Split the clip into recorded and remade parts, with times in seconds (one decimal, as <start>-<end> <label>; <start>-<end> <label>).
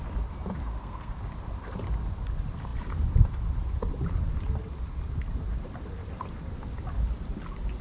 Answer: 0.0-0.6 recorded; 0.6-1.2 remade; 1.2-7.8 recorded